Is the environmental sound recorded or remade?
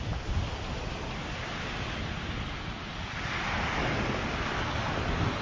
recorded